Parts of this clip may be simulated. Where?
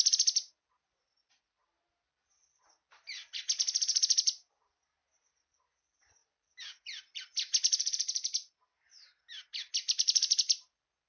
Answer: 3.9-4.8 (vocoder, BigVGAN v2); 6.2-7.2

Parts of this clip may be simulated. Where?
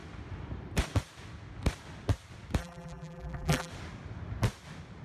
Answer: 2.6-3.7 (vocoder, BigVGAN v2)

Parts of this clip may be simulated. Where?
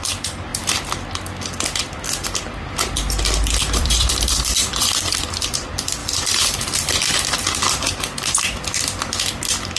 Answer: 3.8-5.3 (vocoder, BigVGAN v2)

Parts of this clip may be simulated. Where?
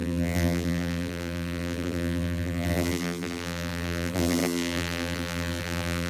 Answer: 0.0-6.1 (vocoder, BigVGAN v2)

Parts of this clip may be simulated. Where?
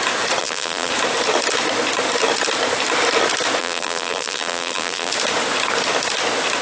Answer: 0.4-0.9 (vocoder, BigVGAN v2); 3.6-5.1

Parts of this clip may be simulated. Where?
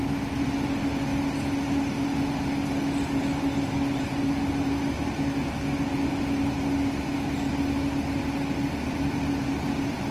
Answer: none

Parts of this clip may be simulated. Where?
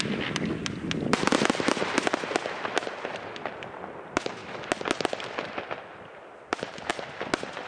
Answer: 5.9-6.9 (vocoder, BigVGAN v2)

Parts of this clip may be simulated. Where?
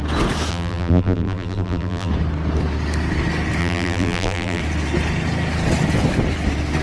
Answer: 0.5-2.1 (vocoder, BigVGAN v2); 3.6-4.6